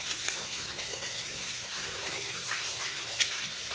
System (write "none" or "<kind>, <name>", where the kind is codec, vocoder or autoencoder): codec, SNAC